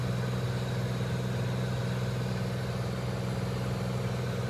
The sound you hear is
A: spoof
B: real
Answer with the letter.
B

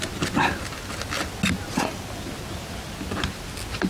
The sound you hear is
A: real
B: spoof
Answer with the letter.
A